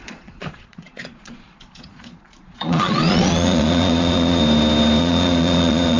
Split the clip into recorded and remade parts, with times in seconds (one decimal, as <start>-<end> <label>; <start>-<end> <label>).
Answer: 0.0-4.4 remade; 4.4-5.0 recorded; 5.0-6.0 remade

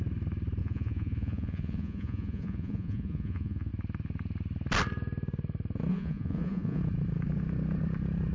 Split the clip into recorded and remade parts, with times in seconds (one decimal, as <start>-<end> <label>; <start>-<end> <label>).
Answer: 0.0-0.6 recorded; 0.6-3.7 remade; 3.7-5.9 recorded; 5.9-6.8 remade; 6.8-8.3 recorded

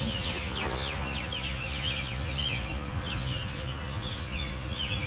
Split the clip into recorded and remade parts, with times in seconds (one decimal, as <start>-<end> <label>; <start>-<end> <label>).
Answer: 0.0-5.1 remade

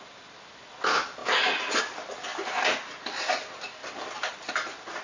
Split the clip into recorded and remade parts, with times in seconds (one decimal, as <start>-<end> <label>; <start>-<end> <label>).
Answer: 0.0-5.0 recorded

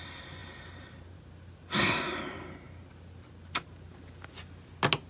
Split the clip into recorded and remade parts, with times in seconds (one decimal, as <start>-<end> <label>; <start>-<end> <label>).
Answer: 0.0-5.1 recorded

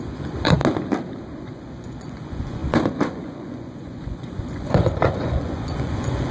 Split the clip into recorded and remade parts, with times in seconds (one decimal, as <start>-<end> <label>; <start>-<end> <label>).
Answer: 0.0-0.6 remade; 0.6-1.4 recorded; 1.4-6.3 remade

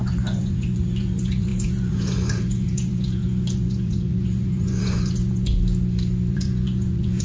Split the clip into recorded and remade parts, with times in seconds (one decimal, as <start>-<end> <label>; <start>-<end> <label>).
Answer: 0.0-5.5 remade; 5.5-6.3 recorded; 6.3-7.2 remade

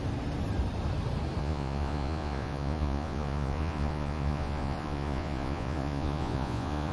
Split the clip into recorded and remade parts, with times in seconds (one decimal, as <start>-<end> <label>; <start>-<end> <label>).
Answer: 0.0-1.4 recorded; 1.4-6.9 remade